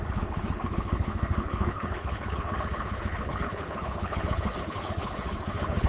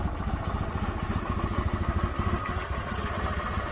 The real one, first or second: second